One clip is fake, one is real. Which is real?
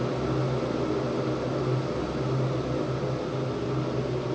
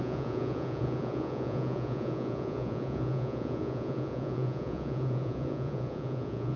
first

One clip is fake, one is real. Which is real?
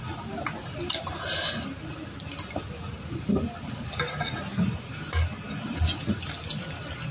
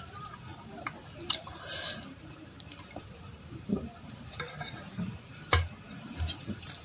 first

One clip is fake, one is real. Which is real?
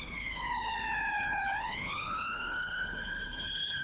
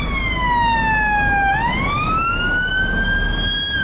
second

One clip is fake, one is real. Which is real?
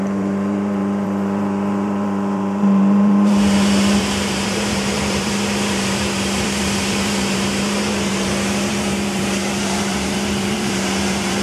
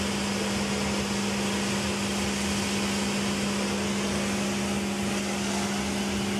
second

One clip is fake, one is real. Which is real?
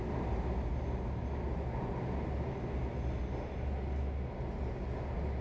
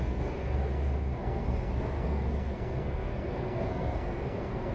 first